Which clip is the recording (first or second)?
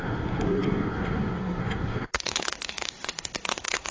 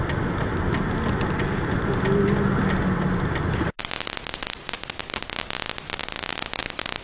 second